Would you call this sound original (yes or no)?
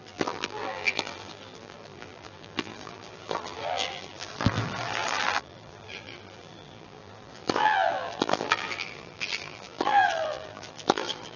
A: no